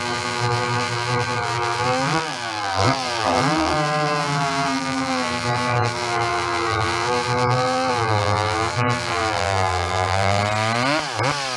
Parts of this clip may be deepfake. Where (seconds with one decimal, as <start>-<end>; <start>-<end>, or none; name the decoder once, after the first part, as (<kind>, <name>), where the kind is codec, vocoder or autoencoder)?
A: 0.0-10.4 (vocoder, BigVGAN v2)